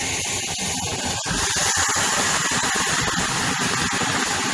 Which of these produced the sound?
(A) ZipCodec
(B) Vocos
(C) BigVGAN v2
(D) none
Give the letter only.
D